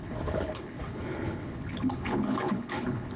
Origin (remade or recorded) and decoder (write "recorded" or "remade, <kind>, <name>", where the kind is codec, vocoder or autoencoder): remade, codec, HILCodec